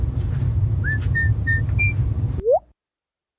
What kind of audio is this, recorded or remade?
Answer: recorded